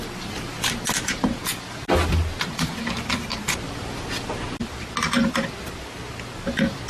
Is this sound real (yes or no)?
yes